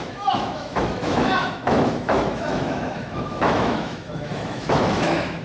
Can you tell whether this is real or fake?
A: fake